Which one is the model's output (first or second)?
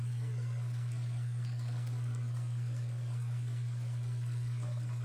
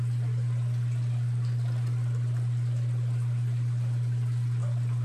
first